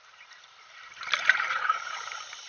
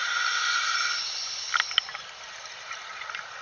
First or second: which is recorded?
second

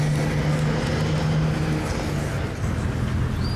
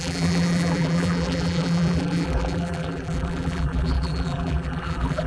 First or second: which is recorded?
first